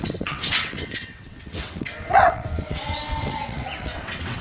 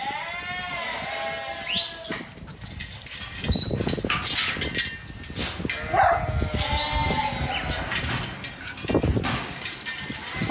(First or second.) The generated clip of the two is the first